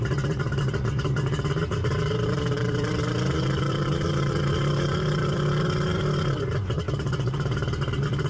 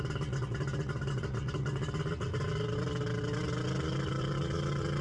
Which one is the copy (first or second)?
first